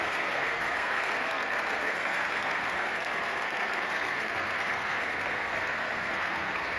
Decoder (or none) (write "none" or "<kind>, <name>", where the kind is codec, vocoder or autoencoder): codec, SNAC